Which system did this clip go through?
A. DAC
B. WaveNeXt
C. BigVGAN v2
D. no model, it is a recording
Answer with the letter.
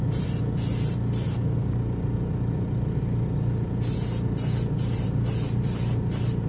D